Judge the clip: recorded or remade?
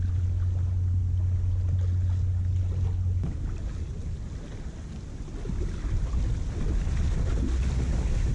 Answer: recorded